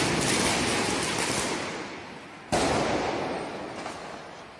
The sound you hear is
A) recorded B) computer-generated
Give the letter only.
A